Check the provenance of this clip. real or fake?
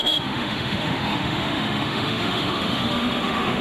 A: fake